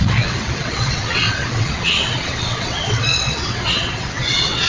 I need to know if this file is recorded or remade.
remade